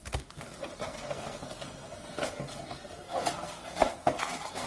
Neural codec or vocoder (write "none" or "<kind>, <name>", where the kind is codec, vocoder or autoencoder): codec, SNAC